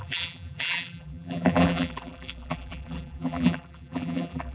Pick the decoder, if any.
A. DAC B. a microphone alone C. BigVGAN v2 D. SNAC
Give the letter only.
C